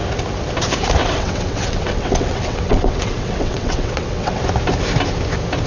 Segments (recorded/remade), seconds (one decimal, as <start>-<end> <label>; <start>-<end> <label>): 0.0-1.0 recorded; 1.0-4.4 remade; 4.4-5.7 recorded